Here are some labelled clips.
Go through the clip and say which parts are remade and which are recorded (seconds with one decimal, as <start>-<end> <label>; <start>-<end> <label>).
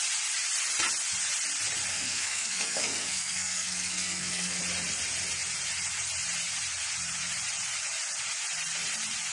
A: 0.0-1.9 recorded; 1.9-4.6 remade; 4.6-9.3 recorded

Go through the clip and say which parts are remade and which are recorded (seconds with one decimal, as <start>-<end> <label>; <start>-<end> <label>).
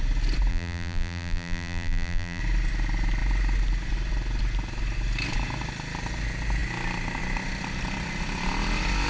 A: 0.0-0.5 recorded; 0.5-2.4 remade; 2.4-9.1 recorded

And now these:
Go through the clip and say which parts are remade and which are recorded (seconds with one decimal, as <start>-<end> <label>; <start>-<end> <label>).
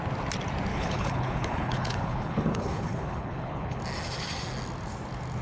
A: 0.0-0.7 recorded; 0.7-3.8 remade; 3.8-5.4 recorded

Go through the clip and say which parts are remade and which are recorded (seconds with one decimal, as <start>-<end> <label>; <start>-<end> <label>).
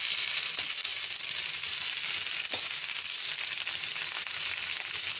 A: 0.0-5.2 recorded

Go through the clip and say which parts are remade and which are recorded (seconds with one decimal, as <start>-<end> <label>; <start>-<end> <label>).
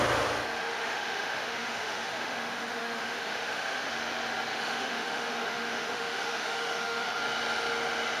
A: 0.0-0.6 recorded; 0.6-3.9 remade; 3.9-4.5 recorded; 4.5-7.2 remade; 7.2-8.2 recorded